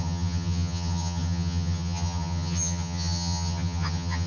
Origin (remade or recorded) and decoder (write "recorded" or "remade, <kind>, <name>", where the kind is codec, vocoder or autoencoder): remade, vocoder, HiFi-GAN